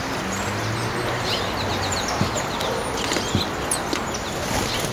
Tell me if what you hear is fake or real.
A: real